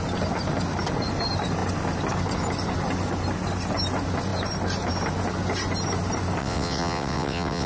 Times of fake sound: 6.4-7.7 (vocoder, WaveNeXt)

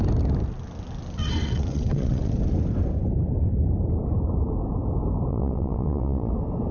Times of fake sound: 1.2-2.3 (vocoder, WaveNeXt); 5.3-6.3

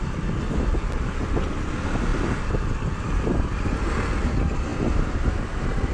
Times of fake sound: none

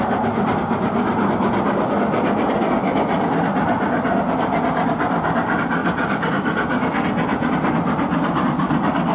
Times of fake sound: none

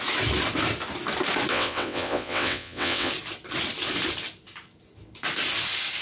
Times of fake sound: 1.5-3.1 (vocoder, WaveNeXt)

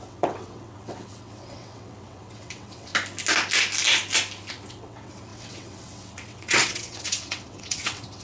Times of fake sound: 0.0-2.9 (vocoder, WaveNeXt); 4.5-8.2

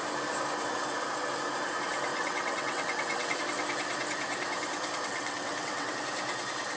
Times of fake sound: 2.1-3.4 (vocoder, WaveNeXt); 5.1-5.9